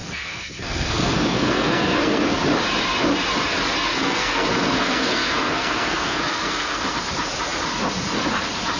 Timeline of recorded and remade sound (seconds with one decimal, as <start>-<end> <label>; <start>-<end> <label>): 0.0-2.4 remade; 2.4-3.9 recorded; 3.9-7.1 remade; 7.1-8.8 recorded